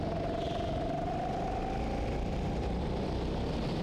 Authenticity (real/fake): real